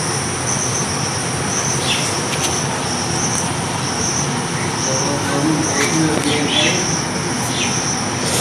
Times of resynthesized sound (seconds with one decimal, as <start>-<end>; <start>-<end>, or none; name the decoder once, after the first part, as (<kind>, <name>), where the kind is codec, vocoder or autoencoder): 0.7-4.2 (vocoder, BigVGAN v2)